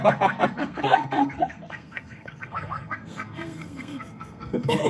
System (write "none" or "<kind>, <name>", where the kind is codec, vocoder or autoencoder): codec, SNAC